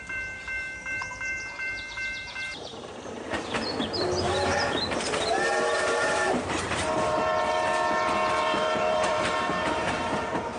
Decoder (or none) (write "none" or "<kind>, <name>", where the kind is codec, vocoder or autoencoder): vocoder, BigVGAN v2